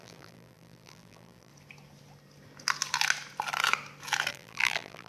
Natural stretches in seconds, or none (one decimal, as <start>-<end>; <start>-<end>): 1.5-4.3

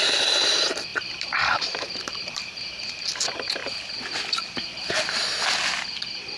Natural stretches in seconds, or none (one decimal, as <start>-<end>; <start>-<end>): 0.0-0.9; 3.1-3.6; 4.9-6.4

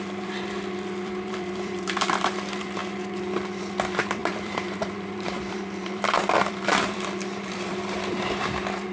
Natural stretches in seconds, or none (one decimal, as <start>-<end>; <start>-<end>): 2.8-3.6

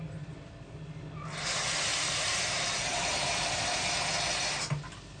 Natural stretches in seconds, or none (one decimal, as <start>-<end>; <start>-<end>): 0.0-1.9; 3.9-5.2

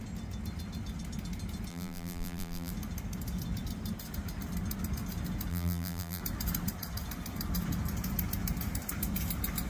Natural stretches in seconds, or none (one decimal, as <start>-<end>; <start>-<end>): 0.0-1.7; 2.7-5.5; 6.2-9.7